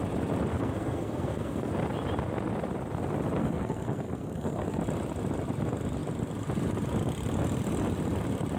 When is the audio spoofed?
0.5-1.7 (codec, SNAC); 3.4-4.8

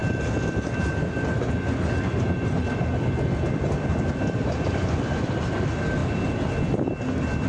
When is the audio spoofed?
none

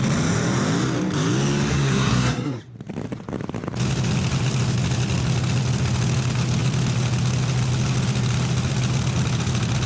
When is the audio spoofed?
1.7-2.6 (codec, SNAC)

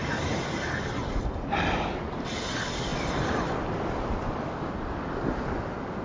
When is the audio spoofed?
none

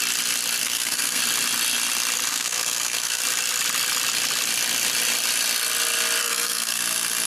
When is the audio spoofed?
0.6-1.2 (codec, SNAC); 2.3-3.2; 6.2-6.8

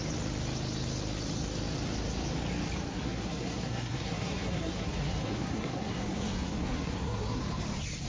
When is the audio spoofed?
2.9-7.4 (codec, SNAC)